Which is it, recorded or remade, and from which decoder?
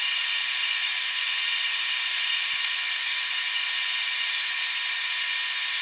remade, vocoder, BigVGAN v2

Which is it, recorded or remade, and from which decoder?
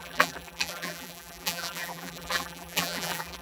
remade, vocoder, BigVGAN v2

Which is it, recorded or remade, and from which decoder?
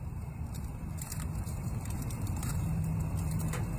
remade, vocoder, BigVGAN v2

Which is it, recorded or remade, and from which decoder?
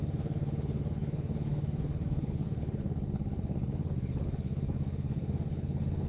remade, codec, HILCodec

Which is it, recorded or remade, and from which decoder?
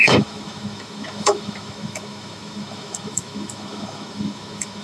remade, autoencoder, DAC-VAE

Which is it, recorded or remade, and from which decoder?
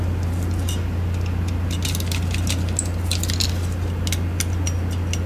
recorded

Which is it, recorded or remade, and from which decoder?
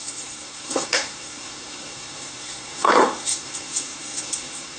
remade, codec, SNAC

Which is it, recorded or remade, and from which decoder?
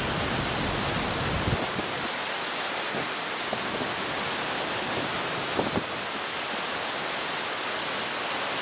recorded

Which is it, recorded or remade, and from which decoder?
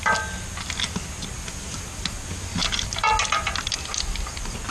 recorded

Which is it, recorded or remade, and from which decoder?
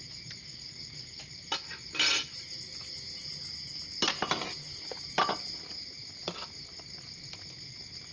recorded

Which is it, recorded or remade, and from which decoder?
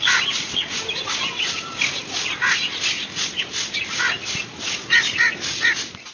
recorded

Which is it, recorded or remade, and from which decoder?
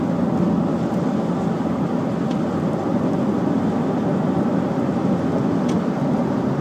recorded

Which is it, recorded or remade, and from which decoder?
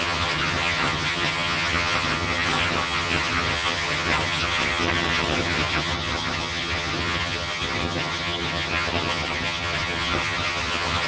remade, vocoder, HiFi-GAN